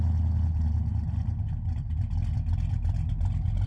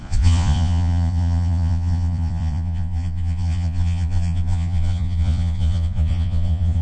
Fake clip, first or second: second